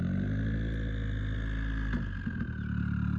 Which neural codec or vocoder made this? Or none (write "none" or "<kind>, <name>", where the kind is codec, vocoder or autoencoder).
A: none